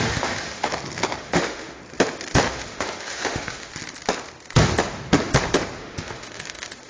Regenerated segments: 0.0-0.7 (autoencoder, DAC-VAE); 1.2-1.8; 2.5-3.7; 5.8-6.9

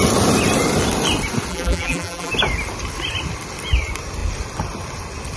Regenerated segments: 1.5-2.3 (vocoder, BigVGAN v2)

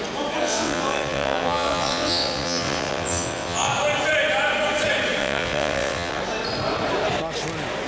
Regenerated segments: 0.4-3.7 (vocoder, WaveNeXt); 5.2-6.2

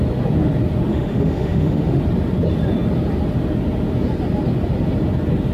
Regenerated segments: 0.9-2.0 (autoencoder, DAC-VAE)

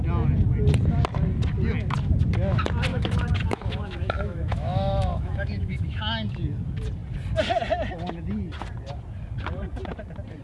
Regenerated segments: 2.9-6.0 (autoencoder, DAC-VAE)

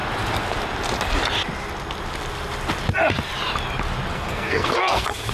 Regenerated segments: 4.1-5.3 (codec, SNAC)